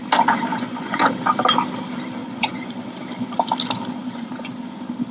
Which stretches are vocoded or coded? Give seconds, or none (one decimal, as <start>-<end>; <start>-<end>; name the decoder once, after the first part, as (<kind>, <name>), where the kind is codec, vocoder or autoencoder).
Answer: 0.5-1.1 (vocoder, Vocos); 2.2-2.7; 4.0-4.5